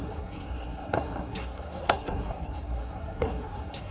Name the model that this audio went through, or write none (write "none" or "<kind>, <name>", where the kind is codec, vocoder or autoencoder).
codec, SNAC